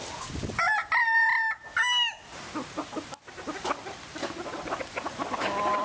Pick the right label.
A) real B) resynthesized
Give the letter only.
A